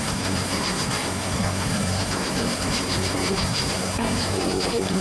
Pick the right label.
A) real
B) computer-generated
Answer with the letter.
B